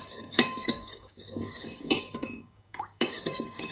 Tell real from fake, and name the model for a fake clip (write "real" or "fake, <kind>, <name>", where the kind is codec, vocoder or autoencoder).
fake, codec, DAC